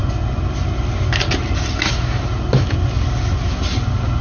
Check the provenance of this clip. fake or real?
real